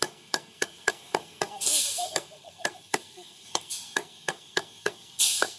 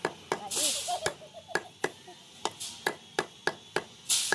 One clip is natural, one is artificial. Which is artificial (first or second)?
first